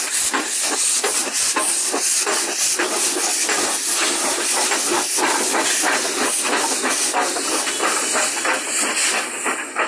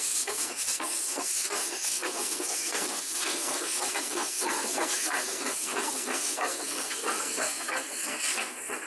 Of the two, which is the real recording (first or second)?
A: first